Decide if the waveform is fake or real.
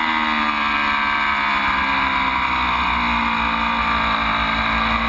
real